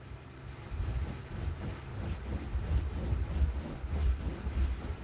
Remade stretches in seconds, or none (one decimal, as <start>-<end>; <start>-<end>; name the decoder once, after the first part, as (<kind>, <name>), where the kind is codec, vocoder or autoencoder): 3.7-4.2 (codec, SNAC)